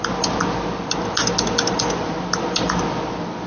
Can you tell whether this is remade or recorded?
recorded